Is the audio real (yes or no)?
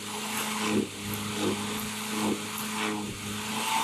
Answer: yes